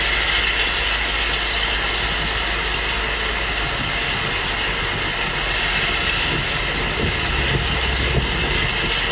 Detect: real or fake real